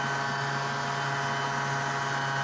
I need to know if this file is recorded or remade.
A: recorded